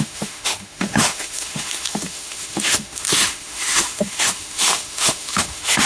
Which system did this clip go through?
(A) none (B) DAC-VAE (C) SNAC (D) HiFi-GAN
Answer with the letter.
B